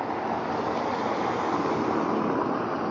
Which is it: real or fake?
real